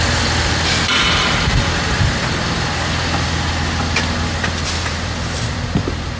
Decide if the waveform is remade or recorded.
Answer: recorded